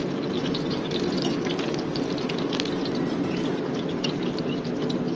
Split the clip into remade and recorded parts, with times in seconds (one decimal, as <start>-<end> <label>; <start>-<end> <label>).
0.0-5.2 recorded